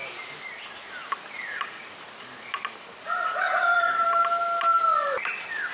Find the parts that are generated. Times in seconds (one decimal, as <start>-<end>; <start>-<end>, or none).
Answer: none